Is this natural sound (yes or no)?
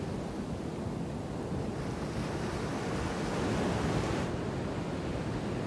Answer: yes